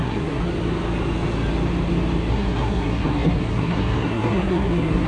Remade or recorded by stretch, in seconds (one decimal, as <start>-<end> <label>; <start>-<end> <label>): 0.0-0.4 remade; 0.4-2.3 recorded; 2.3-5.1 remade